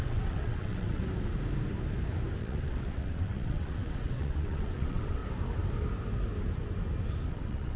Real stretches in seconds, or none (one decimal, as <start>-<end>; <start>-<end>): 1.0-2.4; 5.2-7.3

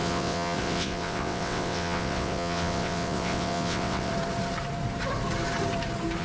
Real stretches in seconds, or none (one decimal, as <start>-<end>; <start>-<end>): 4.1-6.2

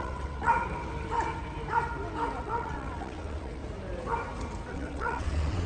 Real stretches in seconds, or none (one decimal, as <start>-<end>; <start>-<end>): 0.5-2.4; 3.6-4.7

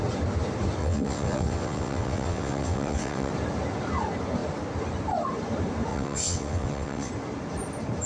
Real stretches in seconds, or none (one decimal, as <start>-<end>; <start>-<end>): 0.0-0.8; 3.3-5.9; 7.1-8.1

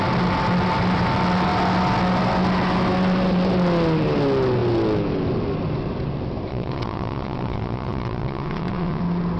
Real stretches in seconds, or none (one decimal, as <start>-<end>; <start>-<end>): 0.0-6.5; 9.0-9.4

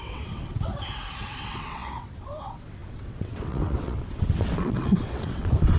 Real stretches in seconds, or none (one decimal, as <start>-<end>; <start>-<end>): 0.7-1.3

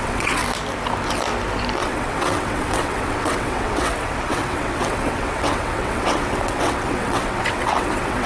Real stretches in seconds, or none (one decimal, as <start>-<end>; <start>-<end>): 0.4-1.8